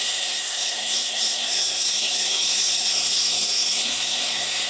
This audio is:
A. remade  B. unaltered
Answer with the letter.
A